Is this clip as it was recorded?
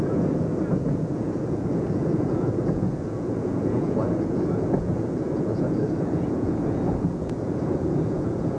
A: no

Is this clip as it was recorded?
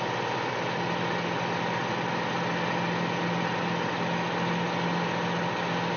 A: yes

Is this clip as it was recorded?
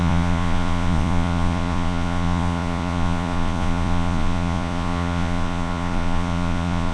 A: no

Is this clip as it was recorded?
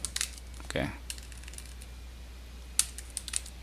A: yes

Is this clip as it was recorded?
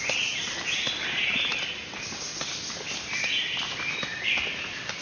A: yes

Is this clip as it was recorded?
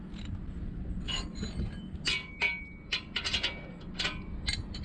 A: yes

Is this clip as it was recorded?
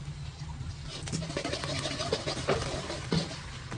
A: yes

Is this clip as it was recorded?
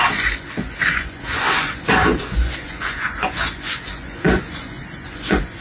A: no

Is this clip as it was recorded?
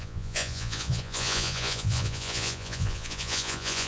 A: no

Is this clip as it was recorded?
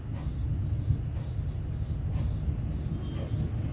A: yes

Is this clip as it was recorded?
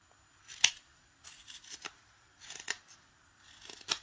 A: yes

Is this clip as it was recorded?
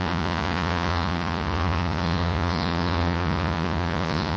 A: no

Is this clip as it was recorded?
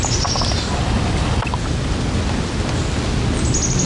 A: yes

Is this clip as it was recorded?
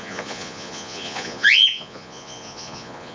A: no